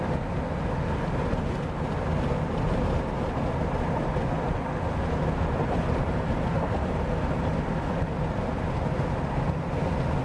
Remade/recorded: recorded